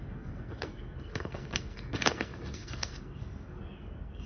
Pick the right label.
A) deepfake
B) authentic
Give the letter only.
A